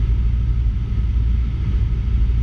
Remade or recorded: recorded